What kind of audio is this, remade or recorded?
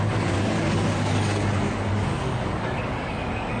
remade